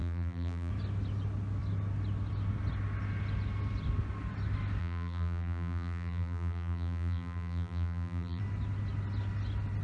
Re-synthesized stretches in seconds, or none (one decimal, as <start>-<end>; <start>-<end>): 0.0-0.7; 4.8-8.4